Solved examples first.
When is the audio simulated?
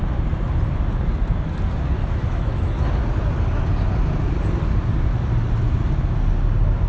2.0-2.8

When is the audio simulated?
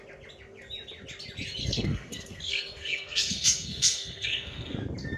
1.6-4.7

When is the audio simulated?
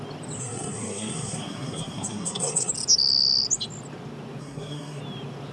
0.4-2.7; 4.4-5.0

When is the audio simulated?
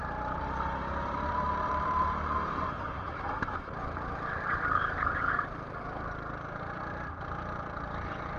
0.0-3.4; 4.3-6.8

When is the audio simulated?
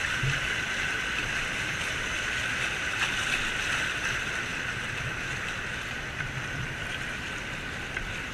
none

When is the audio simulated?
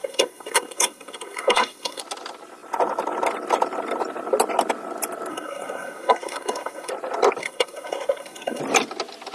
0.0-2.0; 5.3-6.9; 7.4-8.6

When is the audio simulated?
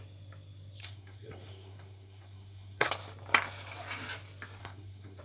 0.8-2.9; 4.6-5.2